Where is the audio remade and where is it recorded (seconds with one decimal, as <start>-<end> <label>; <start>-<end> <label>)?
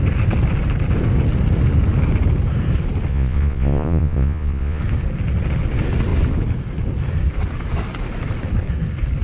0.0-3.1 recorded; 3.1-4.8 remade; 4.8-9.2 recorded